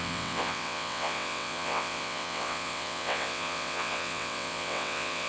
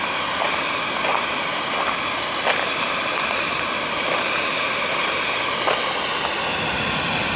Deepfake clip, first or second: first